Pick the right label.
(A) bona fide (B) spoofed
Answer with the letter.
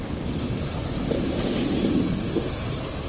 A